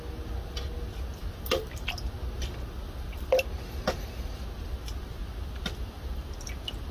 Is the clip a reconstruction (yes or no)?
no